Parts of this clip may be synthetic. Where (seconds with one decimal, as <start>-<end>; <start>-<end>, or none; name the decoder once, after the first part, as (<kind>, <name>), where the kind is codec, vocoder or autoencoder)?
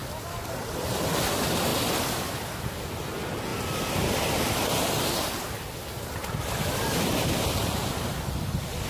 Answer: none